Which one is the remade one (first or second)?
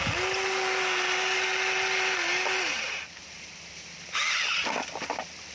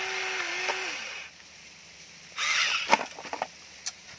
first